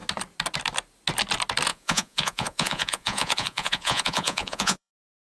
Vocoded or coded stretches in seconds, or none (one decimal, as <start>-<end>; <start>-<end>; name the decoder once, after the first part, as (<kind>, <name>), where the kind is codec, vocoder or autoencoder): 1.7-4.9 (vocoder, Vocos)